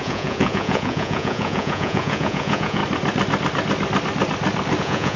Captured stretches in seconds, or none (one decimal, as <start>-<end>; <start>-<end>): 2.8-4.8